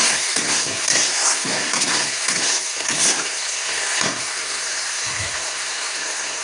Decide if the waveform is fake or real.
fake